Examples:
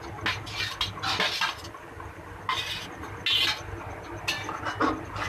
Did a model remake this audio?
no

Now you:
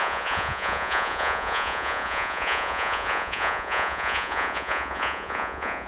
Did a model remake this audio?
yes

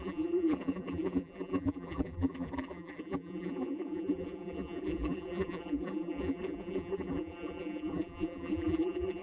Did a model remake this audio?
yes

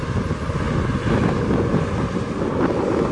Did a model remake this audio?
no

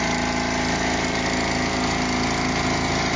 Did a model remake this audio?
no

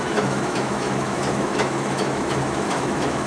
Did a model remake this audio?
yes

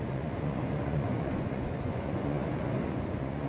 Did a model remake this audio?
yes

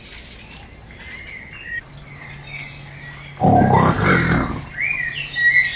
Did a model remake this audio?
no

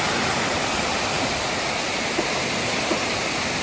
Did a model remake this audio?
no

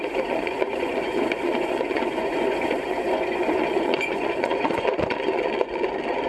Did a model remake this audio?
yes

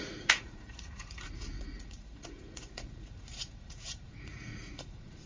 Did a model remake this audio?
yes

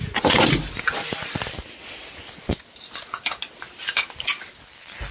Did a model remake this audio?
no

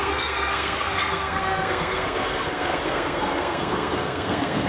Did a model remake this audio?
yes